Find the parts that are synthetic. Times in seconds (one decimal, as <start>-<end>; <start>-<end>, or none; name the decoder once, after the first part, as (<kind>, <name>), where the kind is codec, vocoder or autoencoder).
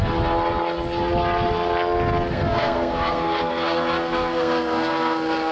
2.3-5.5 (codec, SNAC)